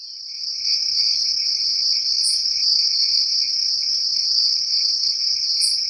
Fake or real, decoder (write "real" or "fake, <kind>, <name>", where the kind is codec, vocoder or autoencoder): real